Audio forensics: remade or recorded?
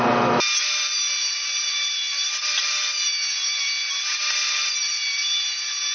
recorded